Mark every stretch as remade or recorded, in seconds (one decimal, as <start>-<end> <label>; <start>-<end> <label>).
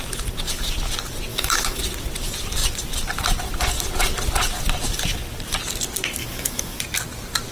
0.0-1.3 recorded; 1.3-1.8 remade; 1.8-6.2 recorded; 6.2-6.8 remade; 6.8-7.5 recorded